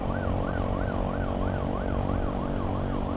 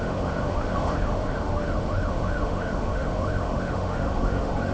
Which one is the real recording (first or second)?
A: first